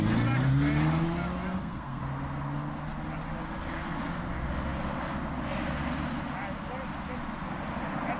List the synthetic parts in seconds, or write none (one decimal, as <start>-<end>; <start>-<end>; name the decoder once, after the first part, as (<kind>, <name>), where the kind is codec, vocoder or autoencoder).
1.5-2.0 (codec, SNAC)